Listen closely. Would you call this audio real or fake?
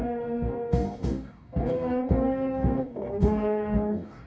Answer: fake